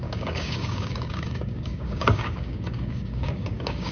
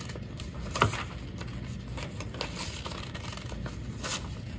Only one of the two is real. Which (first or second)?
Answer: second